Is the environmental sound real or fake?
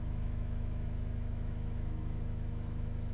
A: fake